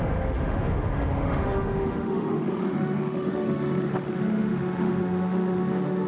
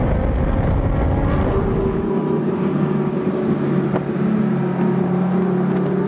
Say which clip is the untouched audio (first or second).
second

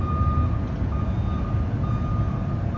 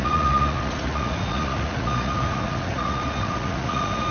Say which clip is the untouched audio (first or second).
first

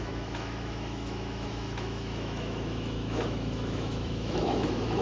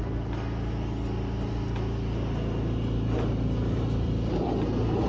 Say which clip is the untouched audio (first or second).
second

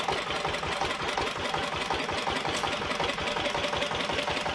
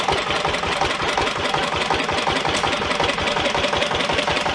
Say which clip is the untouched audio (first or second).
first